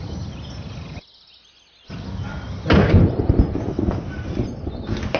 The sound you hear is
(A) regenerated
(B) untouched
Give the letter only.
B